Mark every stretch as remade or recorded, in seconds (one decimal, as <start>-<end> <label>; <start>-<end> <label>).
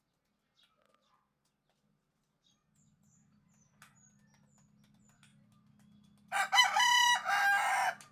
0.0-8.1 recorded